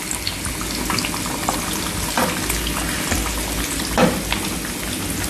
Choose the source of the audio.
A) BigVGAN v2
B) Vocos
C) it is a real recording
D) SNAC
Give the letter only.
C